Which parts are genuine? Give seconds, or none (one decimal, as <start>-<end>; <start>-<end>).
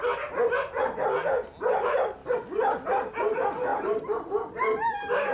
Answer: 0.0-5.3